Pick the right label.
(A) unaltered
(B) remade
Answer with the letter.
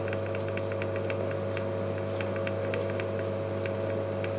A